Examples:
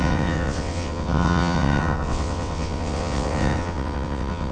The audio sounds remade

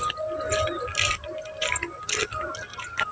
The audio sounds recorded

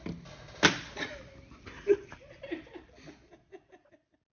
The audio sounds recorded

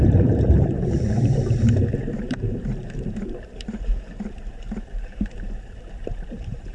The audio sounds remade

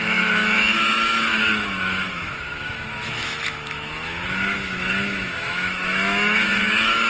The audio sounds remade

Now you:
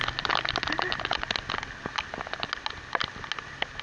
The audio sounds recorded